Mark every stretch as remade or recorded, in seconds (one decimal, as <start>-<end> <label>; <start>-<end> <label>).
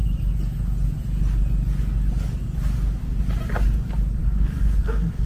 0.0-4.2 recorded; 4.2-5.3 remade